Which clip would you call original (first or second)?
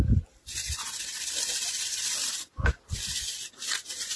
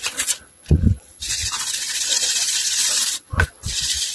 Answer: first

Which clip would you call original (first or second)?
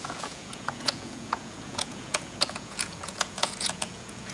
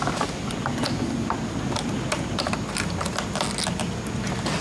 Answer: second